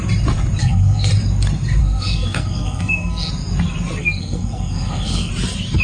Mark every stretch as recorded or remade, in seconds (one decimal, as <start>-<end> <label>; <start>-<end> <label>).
0.0-0.6 recorded; 0.6-1.1 remade; 1.1-1.8 recorded; 1.8-3.3 remade; 3.3-4.0 recorded; 4.0-5.3 remade; 5.3-5.8 recorded